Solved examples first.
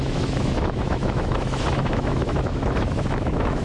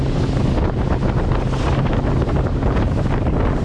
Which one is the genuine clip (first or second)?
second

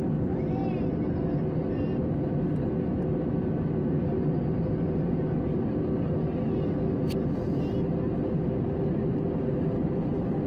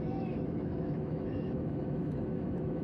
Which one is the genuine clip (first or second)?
first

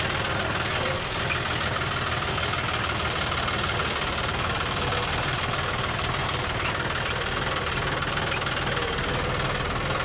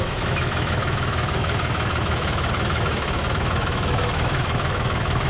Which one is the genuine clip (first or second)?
first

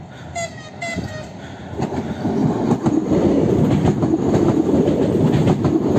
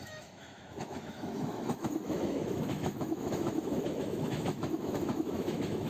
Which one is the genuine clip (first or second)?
first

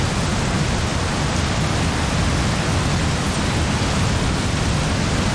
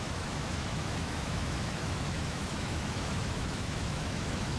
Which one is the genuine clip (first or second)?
first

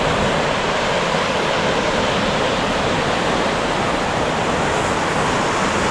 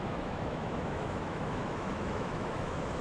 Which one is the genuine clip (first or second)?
first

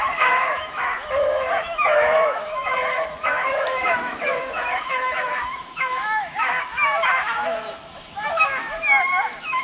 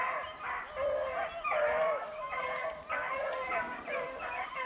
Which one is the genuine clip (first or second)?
second